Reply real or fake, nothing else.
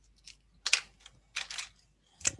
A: real